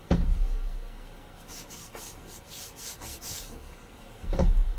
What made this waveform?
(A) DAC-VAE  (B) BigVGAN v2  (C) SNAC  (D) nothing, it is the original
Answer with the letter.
C